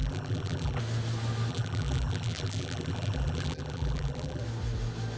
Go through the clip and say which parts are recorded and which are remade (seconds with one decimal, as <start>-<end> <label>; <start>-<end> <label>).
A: 0.0-0.8 remade; 0.8-1.5 recorded; 1.5-4.4 remade; 4.4-5.2 recorded